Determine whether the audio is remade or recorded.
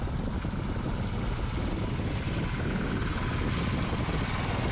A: recorded